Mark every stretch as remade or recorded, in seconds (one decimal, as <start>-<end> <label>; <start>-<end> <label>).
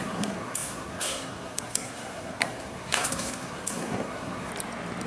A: 0.0-4.5 remade; 4.5-5.1 recorded